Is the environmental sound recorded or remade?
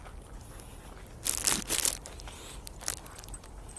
recorded